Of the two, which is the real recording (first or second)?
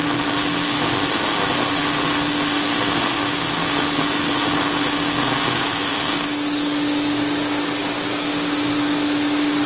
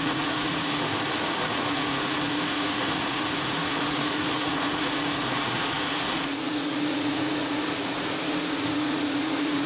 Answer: first